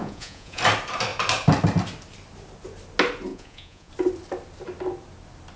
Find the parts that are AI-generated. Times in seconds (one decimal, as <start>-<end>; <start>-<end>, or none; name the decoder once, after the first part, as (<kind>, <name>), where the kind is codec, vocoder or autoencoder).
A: 0.0-0.6 (vocoder, Vocos); 3.3-3.9